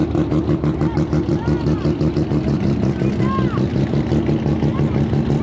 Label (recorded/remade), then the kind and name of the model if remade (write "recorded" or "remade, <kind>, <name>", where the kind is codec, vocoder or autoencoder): recorded